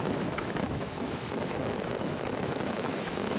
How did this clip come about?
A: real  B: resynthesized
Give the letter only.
B